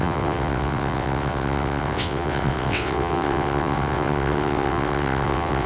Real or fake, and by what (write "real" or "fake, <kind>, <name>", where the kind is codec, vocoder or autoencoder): fake, vocoder, WaveNeXt